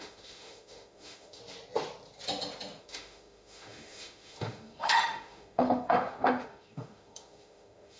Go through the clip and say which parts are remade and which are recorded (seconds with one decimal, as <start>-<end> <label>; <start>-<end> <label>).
0.0-1.4 remade; 1.4-2.8 recorded; 2.8-8.0 remade